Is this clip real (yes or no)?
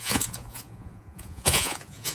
no